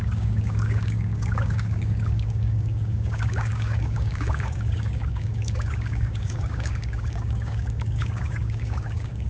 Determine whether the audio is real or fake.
fake